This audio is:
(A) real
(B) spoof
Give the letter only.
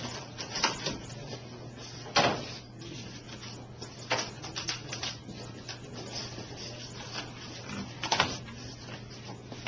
A